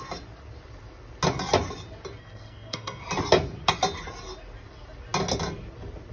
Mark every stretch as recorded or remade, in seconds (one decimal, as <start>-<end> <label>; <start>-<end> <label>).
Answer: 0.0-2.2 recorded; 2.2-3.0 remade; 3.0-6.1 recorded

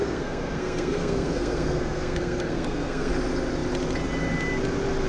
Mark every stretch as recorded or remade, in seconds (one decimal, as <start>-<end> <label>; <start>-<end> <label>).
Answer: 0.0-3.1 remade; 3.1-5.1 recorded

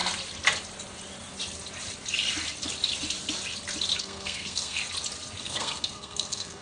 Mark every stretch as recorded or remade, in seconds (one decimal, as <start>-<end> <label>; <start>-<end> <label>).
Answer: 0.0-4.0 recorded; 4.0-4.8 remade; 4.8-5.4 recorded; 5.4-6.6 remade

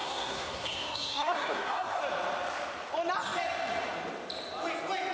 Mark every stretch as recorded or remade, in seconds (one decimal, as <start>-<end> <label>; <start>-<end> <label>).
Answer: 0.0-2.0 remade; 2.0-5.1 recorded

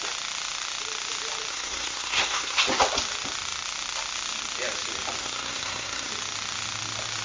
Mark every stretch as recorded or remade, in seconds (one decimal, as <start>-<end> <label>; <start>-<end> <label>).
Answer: 0.0-1.5 recorded; 1.5-2.6 remade; 2.6-5.2 recorded; 5.2-6.1 remade; 6.1-7.2 recorded

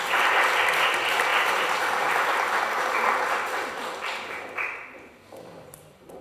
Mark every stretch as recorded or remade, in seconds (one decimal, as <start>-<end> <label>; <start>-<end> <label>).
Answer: 0.0-6.2 recorded